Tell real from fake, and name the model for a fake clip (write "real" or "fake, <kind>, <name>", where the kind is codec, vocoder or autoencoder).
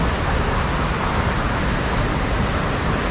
real